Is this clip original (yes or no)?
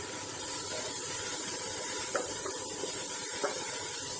no